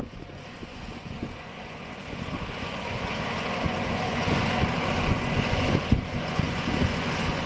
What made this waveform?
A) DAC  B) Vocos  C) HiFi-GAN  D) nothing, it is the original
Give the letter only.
B